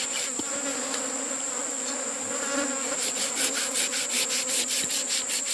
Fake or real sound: real